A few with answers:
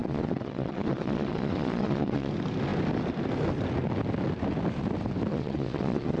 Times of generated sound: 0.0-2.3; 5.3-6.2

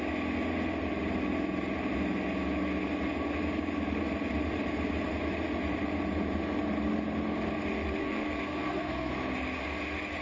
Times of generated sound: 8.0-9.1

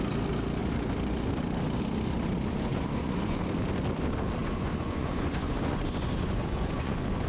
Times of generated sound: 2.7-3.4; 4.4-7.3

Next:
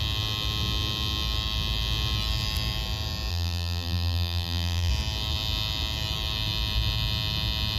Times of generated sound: 3.3-4.9

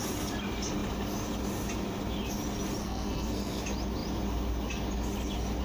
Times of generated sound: 2.8-3.6

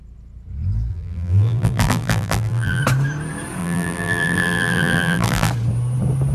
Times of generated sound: 0.9-2.8; 3.6-5.5

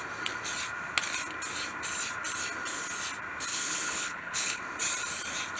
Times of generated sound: 3.5-4.6